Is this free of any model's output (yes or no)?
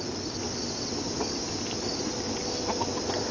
yes